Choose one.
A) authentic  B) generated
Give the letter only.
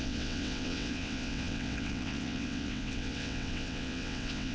B